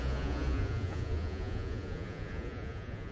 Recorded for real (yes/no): no